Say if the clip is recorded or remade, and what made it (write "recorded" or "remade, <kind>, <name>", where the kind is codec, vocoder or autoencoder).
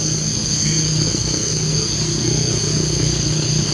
remade, codec, SNAC